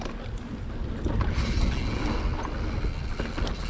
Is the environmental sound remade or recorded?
recorded